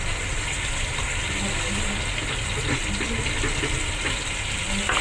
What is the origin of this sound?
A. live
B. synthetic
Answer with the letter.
A